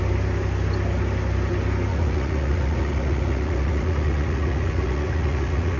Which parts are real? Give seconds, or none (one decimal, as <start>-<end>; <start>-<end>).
0.0-1.9